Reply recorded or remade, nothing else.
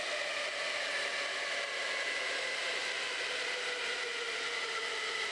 recorded